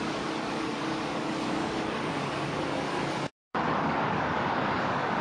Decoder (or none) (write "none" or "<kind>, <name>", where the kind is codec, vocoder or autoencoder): codec, DAC